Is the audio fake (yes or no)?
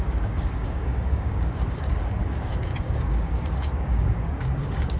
yes